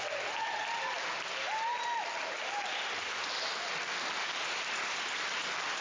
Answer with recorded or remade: recorded